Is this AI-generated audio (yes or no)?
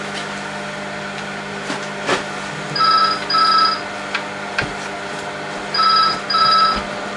no